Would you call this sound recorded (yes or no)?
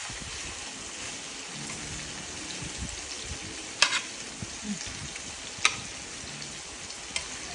yes